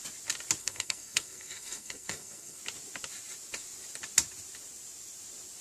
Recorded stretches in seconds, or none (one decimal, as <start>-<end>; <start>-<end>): 0.0-0.6; 2.6-5.6

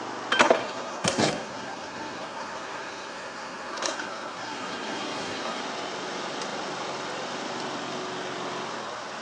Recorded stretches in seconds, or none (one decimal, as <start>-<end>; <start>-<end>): 0.0-0.6; 5.6-9.2

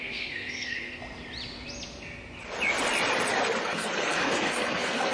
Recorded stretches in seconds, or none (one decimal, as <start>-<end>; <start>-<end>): 1.0-3.6

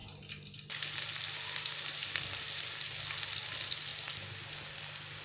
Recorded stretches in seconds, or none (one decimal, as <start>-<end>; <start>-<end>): 0.0-5.2